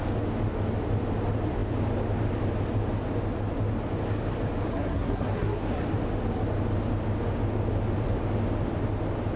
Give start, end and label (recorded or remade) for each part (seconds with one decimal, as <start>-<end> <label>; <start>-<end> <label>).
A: 0.0-4.7 recorded; 4.7-5.8 remade; 5.8-9.4 recorded

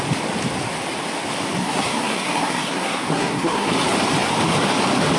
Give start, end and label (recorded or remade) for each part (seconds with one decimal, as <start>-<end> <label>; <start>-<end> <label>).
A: 0.0-1.6 recorded; 1.6-3.7 remade; 3.7-5.2 recorded